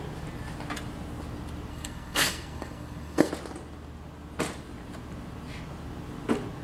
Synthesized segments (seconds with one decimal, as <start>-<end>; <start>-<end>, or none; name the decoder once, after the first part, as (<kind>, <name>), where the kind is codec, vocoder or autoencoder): 1.7-3.3 (codec, SNAC)